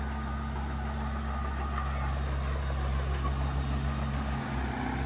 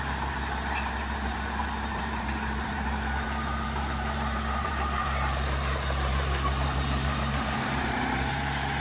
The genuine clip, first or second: first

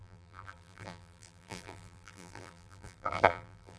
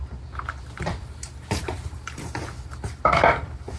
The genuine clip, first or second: second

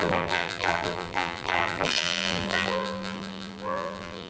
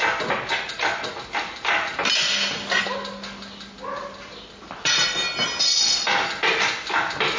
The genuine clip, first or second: second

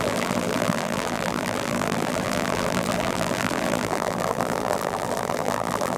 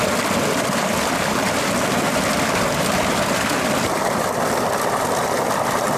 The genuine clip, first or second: second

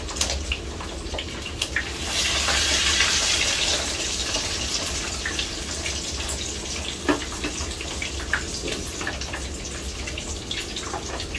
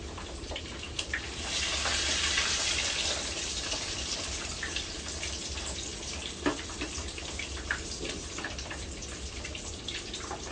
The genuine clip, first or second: first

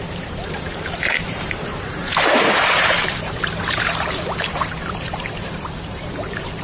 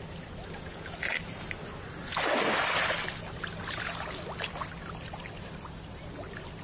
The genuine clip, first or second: second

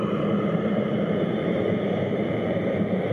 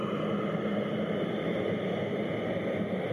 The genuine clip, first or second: second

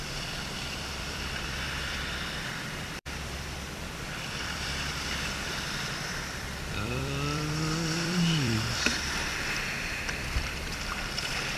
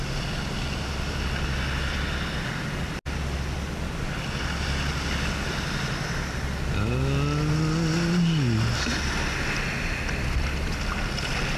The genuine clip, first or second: second